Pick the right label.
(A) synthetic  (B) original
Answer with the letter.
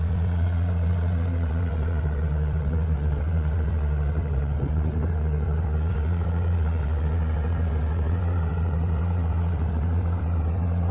A